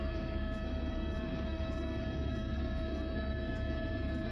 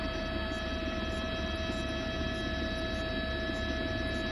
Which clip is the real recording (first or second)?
second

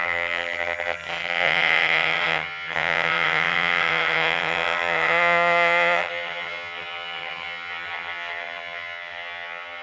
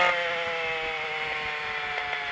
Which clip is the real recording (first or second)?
second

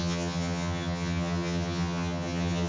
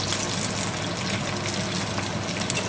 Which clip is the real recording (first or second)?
second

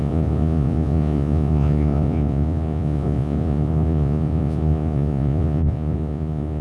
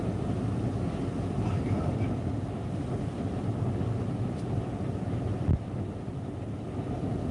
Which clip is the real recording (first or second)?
second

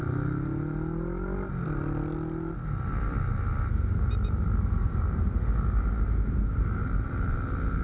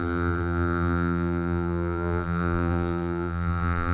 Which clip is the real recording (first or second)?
first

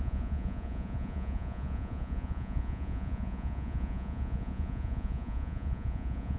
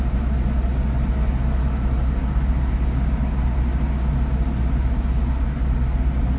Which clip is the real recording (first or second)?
second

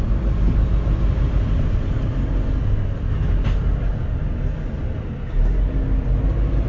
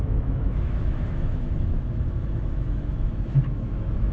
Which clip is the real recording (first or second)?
first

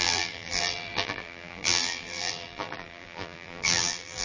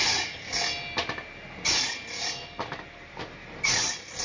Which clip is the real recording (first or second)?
second